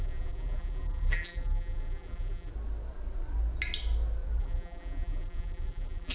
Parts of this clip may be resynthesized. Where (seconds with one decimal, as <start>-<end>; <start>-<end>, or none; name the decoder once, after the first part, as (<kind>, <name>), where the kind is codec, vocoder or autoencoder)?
0.0-2.5 (vocoder, BigVGAN v2); 4.4-6.1